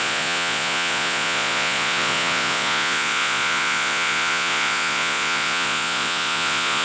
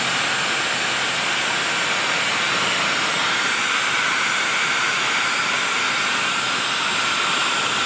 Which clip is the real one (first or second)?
second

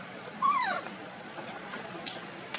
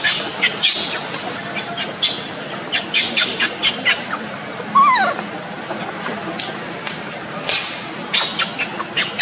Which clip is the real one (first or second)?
second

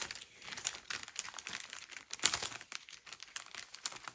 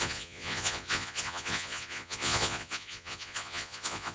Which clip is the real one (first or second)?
first